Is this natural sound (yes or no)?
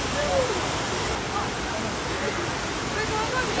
yes